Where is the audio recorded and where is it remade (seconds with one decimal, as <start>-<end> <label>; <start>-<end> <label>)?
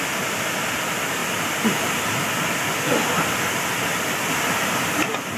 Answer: 0.0-5.4 recorded